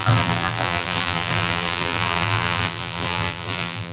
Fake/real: fake